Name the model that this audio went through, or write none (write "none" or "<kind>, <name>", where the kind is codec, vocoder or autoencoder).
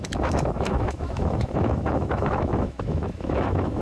autoencoder, DAC-VAE